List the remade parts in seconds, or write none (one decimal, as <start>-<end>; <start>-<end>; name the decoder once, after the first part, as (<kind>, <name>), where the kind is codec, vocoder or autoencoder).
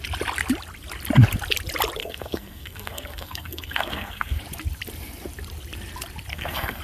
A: 2.0-4.4 (codec, SNAC); 6.3-6.8